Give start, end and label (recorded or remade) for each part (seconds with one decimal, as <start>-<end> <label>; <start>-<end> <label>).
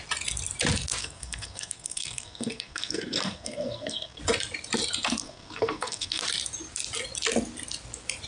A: 0.0-1.0 recorded; 1.0-4.2 remade; 4.2-5.2 recorded; 5.2-6.2 remade; 6.2-8.3 recorded